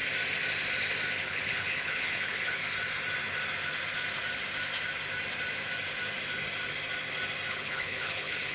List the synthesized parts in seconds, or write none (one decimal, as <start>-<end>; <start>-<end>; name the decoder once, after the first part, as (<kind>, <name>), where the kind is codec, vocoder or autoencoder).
1.2-2.6 (codec, HILCodec); 7.5-8.5